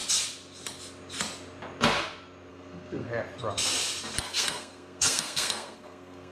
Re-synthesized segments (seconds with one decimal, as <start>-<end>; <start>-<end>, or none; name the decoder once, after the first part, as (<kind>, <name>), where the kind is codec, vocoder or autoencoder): 2.5-3.1 (codec, SNAC); 4.2-6.3